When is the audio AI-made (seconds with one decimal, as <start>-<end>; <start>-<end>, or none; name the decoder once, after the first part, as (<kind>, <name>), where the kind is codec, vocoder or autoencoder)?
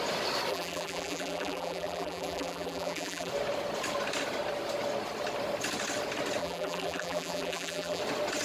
0.5-3.3 (vocoder, BigVGAN v2); 6.4-8.0